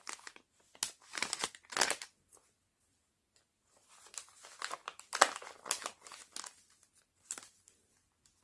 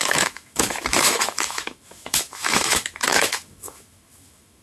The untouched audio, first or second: first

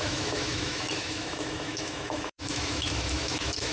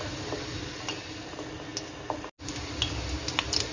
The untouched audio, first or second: second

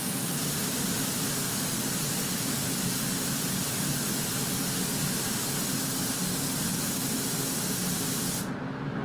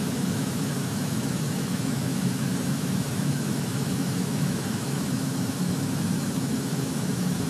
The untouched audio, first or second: first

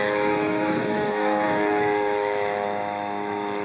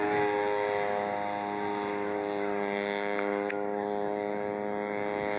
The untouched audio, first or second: second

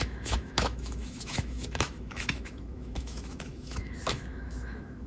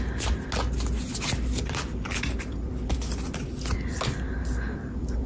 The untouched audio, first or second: second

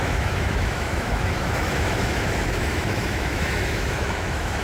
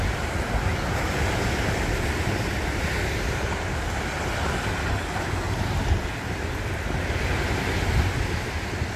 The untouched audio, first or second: second